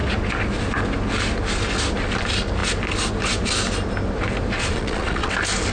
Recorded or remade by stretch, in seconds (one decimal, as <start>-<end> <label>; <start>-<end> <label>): 0.0-4.6 recorded; 4.6-5.3 remade; 5.3-5.7 recorded